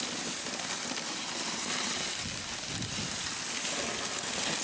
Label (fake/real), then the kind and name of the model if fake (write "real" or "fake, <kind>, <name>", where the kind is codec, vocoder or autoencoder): real